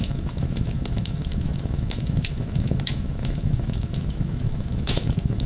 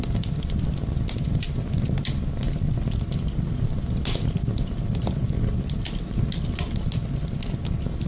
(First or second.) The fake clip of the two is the first